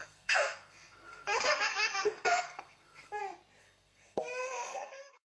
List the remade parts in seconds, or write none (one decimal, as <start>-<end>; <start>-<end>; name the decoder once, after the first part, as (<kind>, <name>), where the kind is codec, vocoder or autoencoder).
0.0-3.2 (codec, SNAC); 3.6-5.4